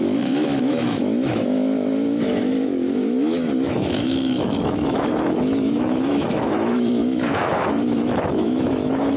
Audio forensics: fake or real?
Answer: fake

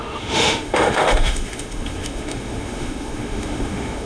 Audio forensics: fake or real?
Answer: fake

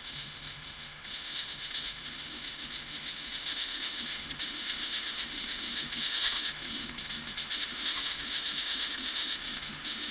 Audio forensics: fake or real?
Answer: fake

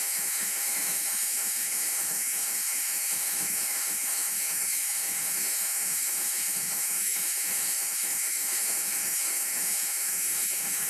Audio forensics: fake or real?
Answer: fake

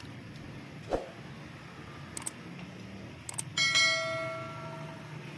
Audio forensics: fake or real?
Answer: real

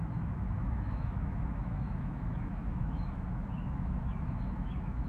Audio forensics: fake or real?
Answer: fake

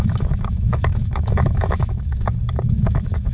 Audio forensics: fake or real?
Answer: fake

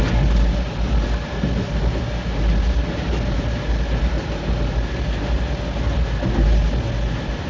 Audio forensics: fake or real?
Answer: real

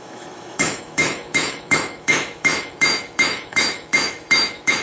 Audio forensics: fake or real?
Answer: fake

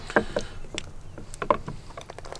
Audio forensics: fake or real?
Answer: real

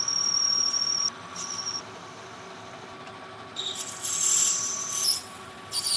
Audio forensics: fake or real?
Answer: real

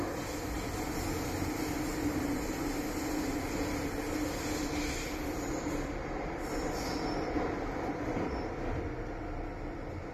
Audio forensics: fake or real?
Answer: real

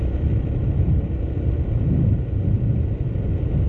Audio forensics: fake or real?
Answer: real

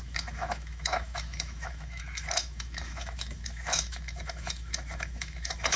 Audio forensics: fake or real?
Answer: fake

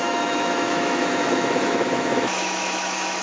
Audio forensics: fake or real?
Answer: fake